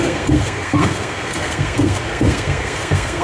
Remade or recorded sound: remade